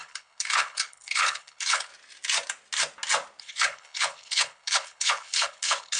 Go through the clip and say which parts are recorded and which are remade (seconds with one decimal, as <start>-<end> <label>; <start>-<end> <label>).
0.0-1.9 remade; 1.9-3.4 recorded; 3.4-6.0 remade